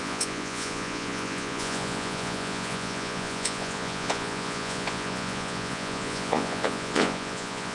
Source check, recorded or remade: remade